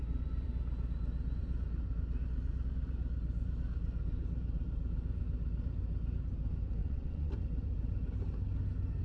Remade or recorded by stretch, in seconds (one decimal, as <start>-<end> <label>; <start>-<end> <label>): 0.0-6.8 recorded; 6.8-7.3 remade; 7.3-9.0 recorded